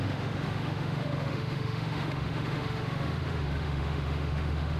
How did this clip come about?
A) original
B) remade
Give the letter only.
B